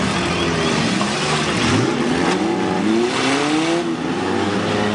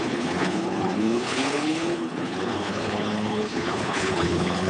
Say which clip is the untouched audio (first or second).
first